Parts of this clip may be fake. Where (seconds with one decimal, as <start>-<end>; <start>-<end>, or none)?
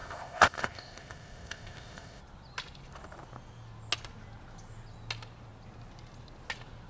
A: 0.0-2.2